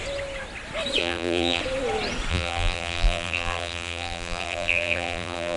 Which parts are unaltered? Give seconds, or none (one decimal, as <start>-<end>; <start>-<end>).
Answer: 0.0-1.0; 1.6-2.3